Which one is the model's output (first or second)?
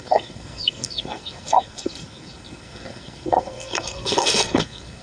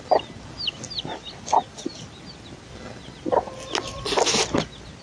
first